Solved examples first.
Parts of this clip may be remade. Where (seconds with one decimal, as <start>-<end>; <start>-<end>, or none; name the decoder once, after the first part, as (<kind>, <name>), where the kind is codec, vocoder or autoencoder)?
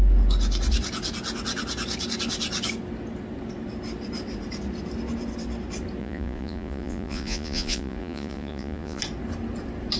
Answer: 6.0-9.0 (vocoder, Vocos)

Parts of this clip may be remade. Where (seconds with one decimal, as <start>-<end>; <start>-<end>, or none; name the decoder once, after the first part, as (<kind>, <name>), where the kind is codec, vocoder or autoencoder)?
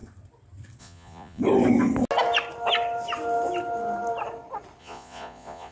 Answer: 0.8-1.4 (vocoder, Vocos); 4.8-5.7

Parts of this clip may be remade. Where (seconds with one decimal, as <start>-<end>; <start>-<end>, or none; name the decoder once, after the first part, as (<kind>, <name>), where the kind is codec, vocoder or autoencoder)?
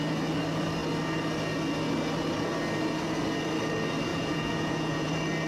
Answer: 4.1-5.1 (vocoder, Vocos)